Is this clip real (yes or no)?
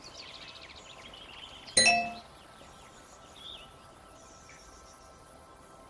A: yes